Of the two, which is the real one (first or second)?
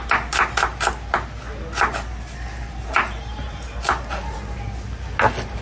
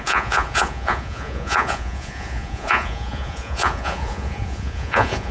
first